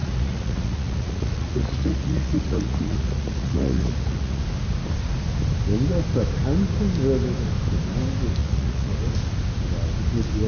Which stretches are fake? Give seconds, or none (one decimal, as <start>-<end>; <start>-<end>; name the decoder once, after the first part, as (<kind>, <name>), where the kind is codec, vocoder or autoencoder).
0.0-4.4 (vocoder, Vocos); 8.4-8.9